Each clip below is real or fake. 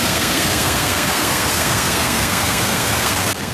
fake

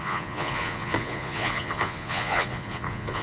fake